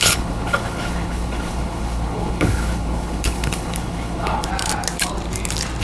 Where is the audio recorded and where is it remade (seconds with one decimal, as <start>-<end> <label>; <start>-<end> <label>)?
0.0-4.5 remade; 4.5-5.8 recorded